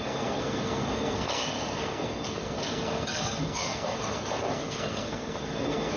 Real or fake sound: fake